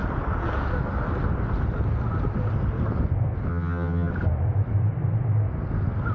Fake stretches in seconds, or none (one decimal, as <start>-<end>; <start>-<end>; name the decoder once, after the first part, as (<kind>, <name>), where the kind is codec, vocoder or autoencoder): 3.5-4.1 (vocoder, HiFi-GAN)